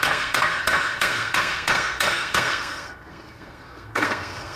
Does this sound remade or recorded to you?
remade